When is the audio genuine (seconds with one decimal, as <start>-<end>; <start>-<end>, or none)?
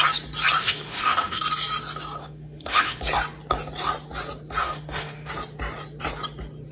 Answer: 0.0-0.6; 1.4-2.2; 3.0-4.6; 5.3-6.7